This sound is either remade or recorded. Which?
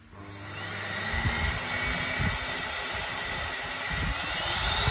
recorded